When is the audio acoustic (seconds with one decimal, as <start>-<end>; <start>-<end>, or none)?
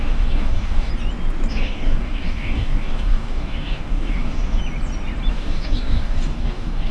0.9-1.5; 4.6-5.3